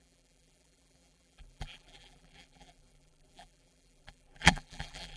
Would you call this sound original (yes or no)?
no